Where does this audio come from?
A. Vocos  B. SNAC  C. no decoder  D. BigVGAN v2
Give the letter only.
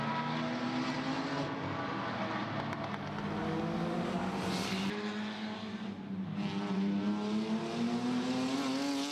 C